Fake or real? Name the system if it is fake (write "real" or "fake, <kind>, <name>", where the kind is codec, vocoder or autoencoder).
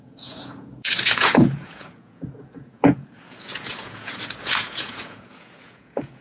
fake, vocoder, Vocos